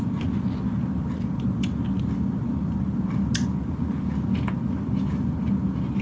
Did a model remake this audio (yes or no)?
no